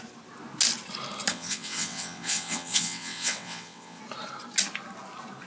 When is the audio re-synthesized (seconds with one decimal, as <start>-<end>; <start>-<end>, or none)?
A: 1.3-4.0